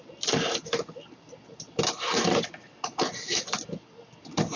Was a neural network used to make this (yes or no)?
no